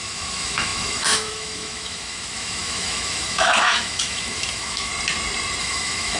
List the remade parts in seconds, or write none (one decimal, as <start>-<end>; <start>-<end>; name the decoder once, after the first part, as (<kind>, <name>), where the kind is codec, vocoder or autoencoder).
0.0-4.9 (autoencoder, DAC-VAE); 5.6-6.2